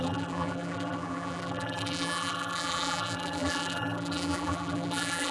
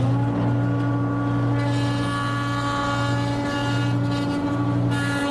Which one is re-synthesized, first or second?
first